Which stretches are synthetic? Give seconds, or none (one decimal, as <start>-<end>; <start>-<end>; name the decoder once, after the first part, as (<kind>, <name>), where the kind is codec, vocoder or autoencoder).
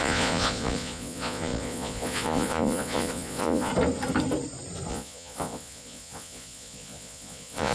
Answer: 0.0-3.7 (vocoder, Vocos); 4.9-7.7